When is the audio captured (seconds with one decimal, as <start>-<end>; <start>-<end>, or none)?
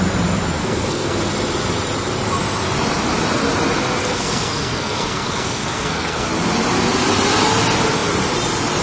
0.0-0.6; 1.3-4.0; 6.3-8.8